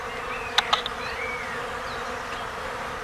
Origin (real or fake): real